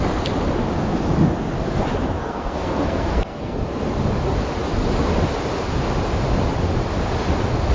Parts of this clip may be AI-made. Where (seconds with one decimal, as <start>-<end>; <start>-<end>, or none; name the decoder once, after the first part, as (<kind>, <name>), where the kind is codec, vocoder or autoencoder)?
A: 2.2-3.7 (codec, SNAC)